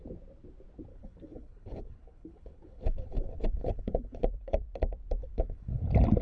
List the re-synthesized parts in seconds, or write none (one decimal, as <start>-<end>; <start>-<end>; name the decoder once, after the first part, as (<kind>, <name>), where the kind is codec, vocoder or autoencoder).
0.9-4.6 (codec, HILCodec); 5.2-5.8